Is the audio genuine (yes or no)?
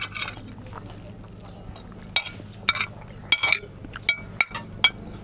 yes